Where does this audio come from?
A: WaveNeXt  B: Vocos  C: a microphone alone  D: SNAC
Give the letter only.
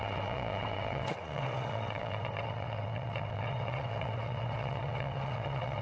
A